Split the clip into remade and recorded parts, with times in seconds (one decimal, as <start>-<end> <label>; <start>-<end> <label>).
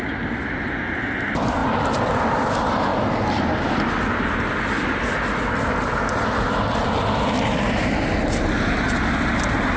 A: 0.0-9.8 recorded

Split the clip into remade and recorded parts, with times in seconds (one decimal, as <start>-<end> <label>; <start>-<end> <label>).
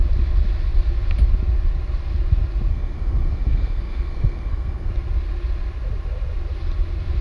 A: 0.0-2.7 recorded; 2.7-4.9 remade; 4.9-7.2 recorded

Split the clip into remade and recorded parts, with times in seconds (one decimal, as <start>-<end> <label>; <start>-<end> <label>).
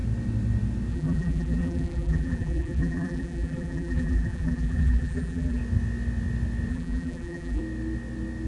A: 0.0-0.9 recorded; 0.9-5.6 remade; 5.6-6.7 recorded; 6.7-7.6 remade; 7.6-8.5 recorded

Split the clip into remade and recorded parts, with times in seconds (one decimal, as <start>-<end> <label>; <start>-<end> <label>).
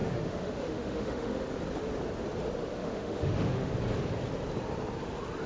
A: 0.0-1.5 remade; 1.5-2.8 recorded; 2.8-3.7 remade; 3.7-5.5 recorded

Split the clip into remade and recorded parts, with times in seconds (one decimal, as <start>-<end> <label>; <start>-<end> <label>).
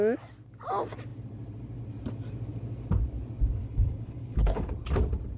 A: 0.0-3.6 recorded; 3.6-4.7 remade; 4.7-5.4 recorded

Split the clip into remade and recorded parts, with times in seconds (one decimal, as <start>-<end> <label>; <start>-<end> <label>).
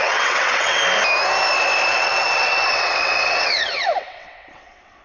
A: 0.0-0.8 remade; 0.8-1.9 recorded; 1.9-5.0 remade